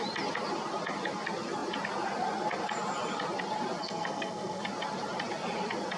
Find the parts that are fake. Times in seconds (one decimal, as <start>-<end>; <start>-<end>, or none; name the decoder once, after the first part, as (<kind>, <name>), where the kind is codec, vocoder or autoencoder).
3.8-4.6 (codec, SNAC)